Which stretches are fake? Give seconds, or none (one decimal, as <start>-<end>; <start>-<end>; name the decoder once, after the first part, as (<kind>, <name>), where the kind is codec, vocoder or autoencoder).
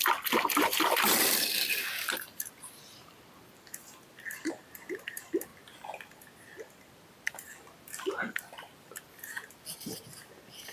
0.0-10.7 (vocoder, BigVGAN v2)